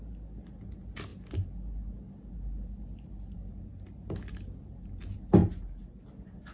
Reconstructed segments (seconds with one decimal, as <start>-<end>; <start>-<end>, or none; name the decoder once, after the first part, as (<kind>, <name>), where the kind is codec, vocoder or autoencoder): none